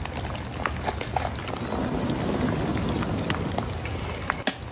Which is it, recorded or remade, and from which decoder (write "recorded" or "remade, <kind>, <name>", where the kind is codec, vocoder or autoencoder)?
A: recorded